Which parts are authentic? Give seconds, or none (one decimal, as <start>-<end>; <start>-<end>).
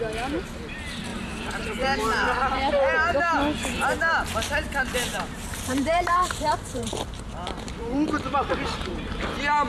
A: 0.0-1.1; 2.4-5.1; 8.9-9.7